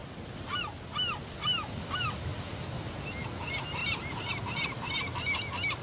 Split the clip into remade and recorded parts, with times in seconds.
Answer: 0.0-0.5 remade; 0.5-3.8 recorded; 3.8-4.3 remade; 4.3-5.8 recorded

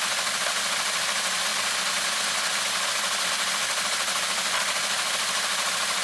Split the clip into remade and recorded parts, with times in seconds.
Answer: 0.0-6.0 recorded

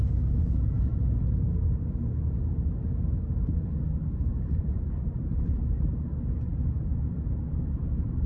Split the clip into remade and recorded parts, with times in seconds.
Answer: 0.0-8.3 recorded

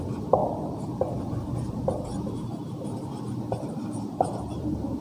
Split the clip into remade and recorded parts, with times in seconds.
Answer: 0.0-5.0 remade

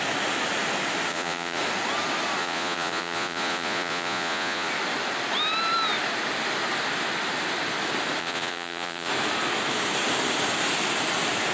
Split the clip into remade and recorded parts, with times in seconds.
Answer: 0.0-1.1 recorded; 1.1-1.6 remade; 1.6-2.4 recorded; 2.4-4.7 remade; 4.7-8.2 recorded; 8.2-9.1 remade; 9.1-11.5 recorded

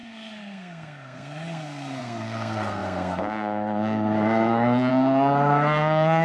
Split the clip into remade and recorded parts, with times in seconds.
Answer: 0.0-6.2 remade

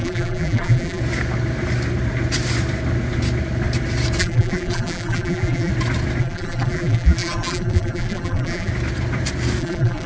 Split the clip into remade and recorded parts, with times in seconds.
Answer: 0.0-1.0 remade; 1.0-4.2 recorded; 4.2-5.7 remade; 5.7-6.2 recorded; 6.2-8.7 remade; 8.7-9.6 recorded; 9.6-10.1 remade

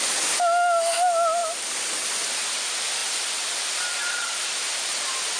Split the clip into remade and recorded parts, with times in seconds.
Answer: 0.0-1.4 recorded; 1.4-2.5 remade; 2.5-5.4 recorded